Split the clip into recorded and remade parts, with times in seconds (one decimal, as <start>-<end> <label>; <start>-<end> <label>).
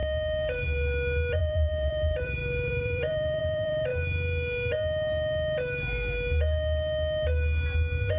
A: 0.0-1.4 recorded; 1.4-3.9 remade; 3.9-8.2 recorded